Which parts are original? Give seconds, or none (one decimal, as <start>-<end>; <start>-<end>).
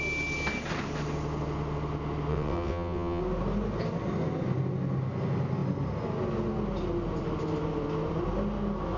0.0-2.3; 3.2-9.0